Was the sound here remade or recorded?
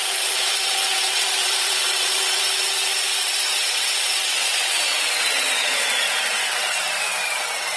remade